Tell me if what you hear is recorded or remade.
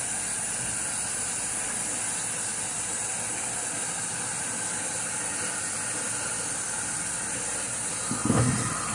recorded